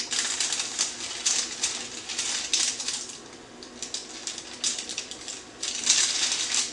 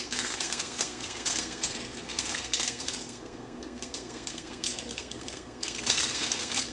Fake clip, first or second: second